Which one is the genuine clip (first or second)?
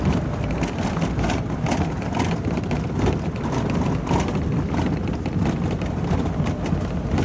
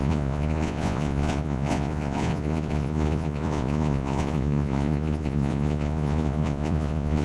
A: first